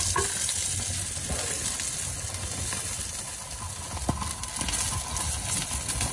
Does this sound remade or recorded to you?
recorded